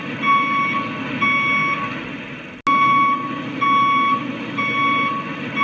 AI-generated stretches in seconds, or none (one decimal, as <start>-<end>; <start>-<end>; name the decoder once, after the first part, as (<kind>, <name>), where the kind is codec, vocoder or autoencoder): none